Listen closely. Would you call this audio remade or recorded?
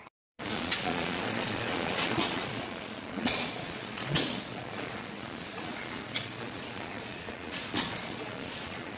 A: remade